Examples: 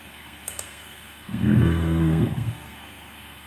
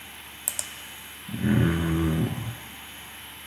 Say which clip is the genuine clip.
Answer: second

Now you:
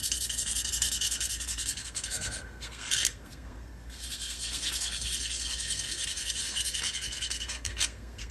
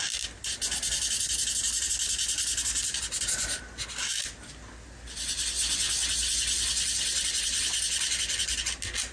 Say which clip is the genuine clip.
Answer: second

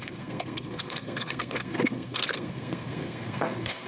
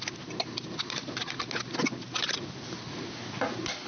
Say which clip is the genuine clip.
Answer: second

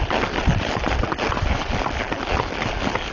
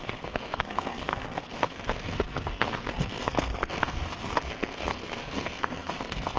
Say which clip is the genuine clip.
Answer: first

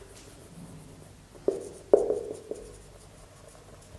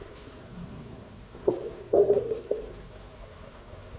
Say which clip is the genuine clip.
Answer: first